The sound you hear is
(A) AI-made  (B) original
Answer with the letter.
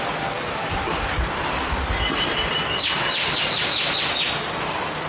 B